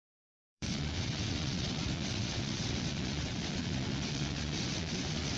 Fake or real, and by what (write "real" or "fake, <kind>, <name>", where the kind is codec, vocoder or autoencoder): fake, vocoder, WaveNeXt